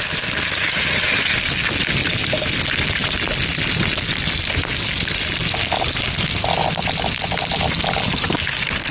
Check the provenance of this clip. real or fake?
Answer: real